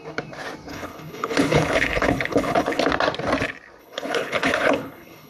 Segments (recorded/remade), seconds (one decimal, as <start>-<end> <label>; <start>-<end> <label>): 0.0-0.7 recorded; 0.7-2.8 remade; 2.8-3.8 recorded; 3.8-5.3 remade